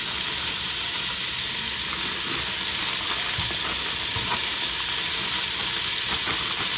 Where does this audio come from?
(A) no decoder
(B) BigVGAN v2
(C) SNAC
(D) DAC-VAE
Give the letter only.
A